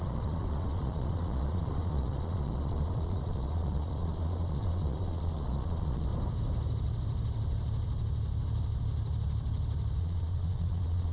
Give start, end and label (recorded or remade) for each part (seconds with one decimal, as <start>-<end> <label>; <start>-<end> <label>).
0.0-6.1 remade; 6.1-10.0 recorded; 10.0-11.1 remade